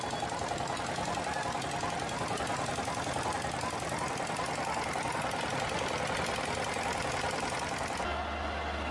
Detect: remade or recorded recorded